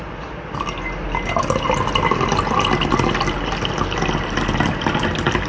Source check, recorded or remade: recorded